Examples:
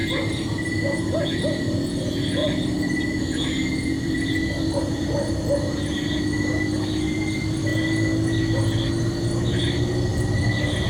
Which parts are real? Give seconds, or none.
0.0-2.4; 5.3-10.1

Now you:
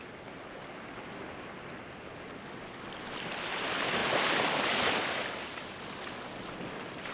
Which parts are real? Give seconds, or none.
0.0-7.1